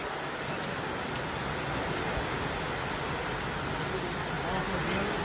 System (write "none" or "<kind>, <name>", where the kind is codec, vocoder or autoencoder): none